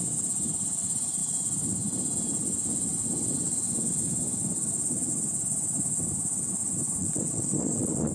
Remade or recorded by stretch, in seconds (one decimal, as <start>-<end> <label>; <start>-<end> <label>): 0.0-7.0 recorded; 7.0-8.1 remade

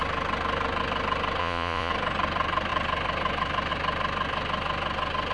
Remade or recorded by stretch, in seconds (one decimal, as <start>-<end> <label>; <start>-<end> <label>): 0.0-1.4 recorded; 1.4-1.9 remade; 1.9-5.3 recorded

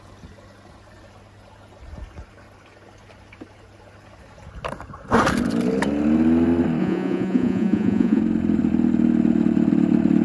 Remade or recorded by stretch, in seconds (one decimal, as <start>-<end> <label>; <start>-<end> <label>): 0.0-6.8 recorded; 6.8-8.2 remade; 8.2-10.2 recorded

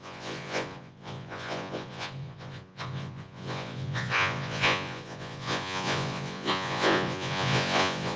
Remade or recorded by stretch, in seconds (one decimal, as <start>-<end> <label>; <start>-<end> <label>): 0.0-8.2 remade